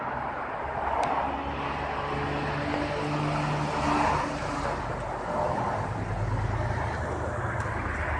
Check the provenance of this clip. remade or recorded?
recorded